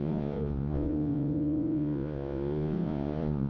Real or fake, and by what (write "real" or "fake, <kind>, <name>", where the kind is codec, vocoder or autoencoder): fake, vocoder, Vocos